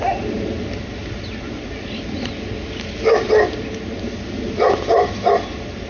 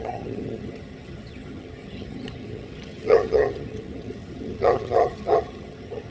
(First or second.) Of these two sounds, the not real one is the second